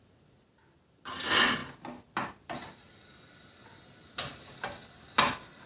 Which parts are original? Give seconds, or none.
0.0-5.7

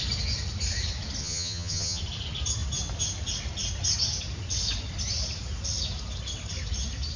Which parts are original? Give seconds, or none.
0.0-1.2; 2.0-7.2

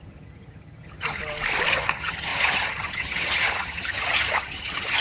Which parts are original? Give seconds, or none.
1.2-1.7

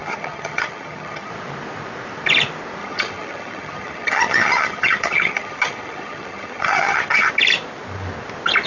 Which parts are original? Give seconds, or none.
1.3-2.8; 7.3-8.7

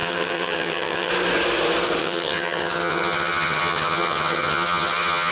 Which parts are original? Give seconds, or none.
1.1-2.0